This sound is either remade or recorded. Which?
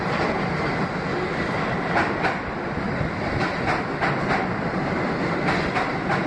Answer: recorded